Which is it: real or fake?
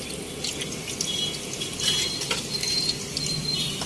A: real